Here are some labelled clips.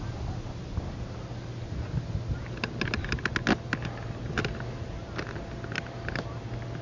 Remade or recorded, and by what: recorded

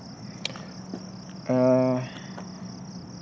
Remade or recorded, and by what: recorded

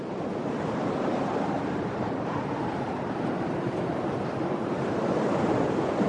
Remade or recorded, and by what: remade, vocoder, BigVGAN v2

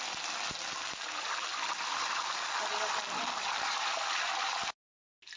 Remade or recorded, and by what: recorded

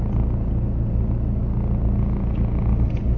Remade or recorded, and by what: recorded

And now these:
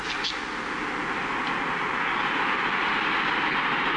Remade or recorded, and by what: recorded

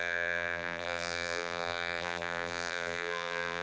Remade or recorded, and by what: remade, vocoder, BigVGAN v2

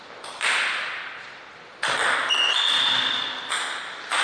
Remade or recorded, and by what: recorded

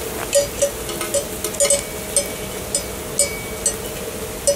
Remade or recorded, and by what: recorded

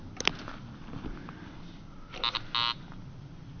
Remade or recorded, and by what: recorded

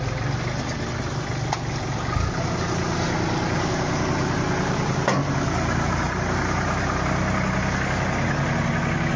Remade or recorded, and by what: recorded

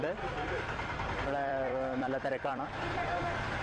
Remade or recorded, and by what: remade, vocoder, BigVGAN v2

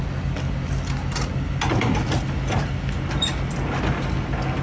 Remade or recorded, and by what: recorded